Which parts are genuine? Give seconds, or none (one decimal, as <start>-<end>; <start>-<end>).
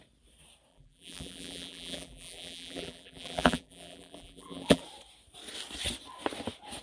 0.0-0.7; 4.8-6.8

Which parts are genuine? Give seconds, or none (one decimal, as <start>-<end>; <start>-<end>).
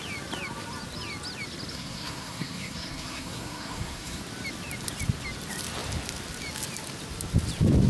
0.0-1.7; 4.2-7.9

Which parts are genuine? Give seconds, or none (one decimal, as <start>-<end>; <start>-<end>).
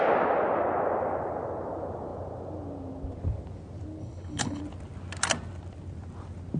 0.0-4.0; 4.6-6.6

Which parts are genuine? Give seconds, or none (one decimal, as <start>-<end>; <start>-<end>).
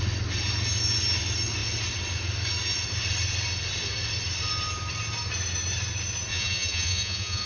0.0-6.3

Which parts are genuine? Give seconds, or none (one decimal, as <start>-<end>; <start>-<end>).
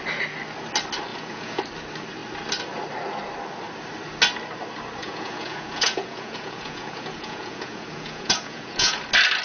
0.0-1.1; 1.6-5.0; 9.0-9.4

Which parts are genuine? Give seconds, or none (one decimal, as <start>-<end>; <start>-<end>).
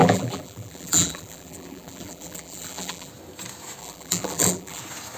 3.1-3.8; 4.8-5.2